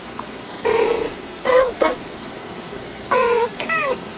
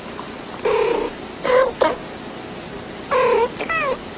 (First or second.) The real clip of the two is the second